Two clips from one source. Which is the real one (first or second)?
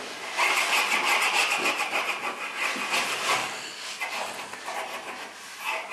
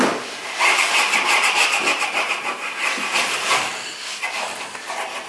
first